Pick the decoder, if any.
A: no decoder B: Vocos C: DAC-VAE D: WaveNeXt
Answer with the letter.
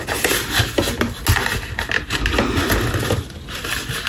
A